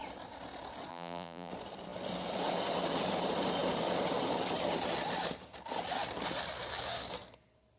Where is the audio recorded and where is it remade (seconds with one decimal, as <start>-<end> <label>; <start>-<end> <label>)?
0.0-0.9 recorded; 0.9-1.5 remade; 1.5-7.8 recorded